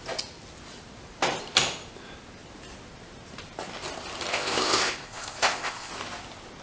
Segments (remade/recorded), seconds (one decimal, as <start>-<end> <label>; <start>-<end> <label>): 0.0-4.3 recorded; 4.3-5.9 remade; 5.9-6.6 recorded